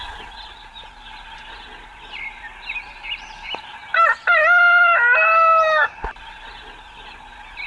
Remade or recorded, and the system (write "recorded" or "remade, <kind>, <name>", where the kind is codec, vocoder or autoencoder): recorded